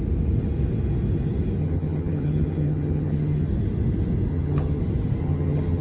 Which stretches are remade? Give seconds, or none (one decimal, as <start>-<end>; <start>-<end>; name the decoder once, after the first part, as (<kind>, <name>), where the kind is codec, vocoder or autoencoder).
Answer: 1.6-3.5 (vocoder, HiFi-GAN); 4.3-4.8; 5.2-5.8